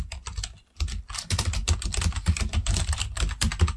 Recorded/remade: recorded